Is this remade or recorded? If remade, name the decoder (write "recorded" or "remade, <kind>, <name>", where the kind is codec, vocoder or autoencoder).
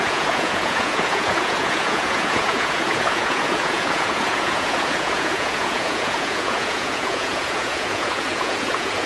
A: remade, vocoder, Vocos